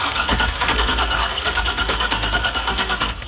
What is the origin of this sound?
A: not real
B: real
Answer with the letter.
A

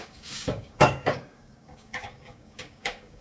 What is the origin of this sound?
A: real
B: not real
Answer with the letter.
B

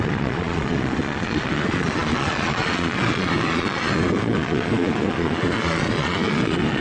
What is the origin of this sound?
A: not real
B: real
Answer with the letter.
A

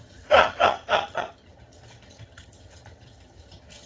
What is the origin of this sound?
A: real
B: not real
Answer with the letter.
B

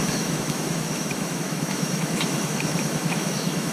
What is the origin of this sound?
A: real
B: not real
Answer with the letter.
B